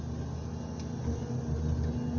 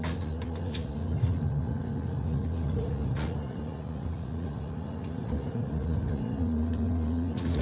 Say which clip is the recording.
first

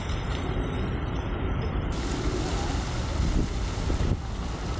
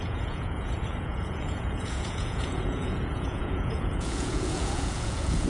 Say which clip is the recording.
first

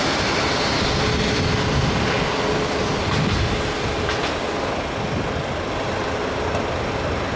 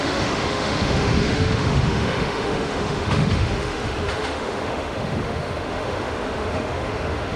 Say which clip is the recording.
first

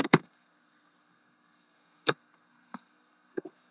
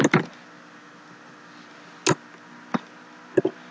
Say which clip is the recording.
second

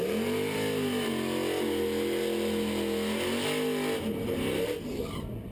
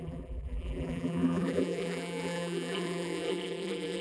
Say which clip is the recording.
first